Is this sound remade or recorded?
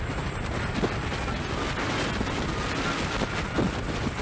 recorded